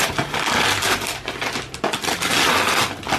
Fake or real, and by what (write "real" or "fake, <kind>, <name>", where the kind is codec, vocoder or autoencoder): real